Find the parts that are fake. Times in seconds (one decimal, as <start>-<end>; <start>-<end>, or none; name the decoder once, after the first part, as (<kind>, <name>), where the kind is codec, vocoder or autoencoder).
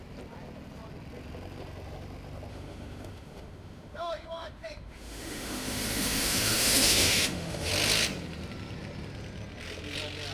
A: 2.5-7.7 (autoencoder, DAC-VAE)